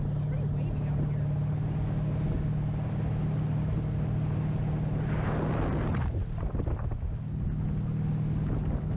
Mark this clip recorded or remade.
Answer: recorded